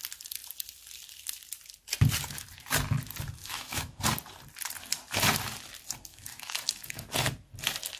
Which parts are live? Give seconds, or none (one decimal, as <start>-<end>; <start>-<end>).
0.0-3.4; 4.0-6.1; 7.1-8.0